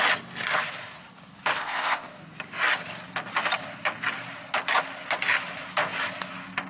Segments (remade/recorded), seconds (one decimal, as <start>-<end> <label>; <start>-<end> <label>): 0.0-1.5 recorded; 1.5-2.2 remade; 2.2-6.7 recorded